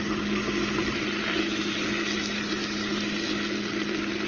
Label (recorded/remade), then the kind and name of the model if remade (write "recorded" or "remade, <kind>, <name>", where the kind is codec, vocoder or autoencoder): recorded